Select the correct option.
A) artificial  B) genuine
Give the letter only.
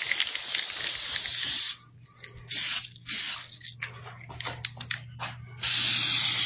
B